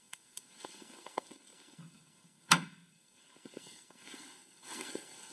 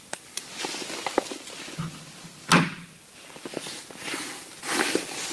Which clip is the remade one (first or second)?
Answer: first